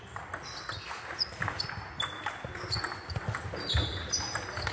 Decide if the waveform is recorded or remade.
recorded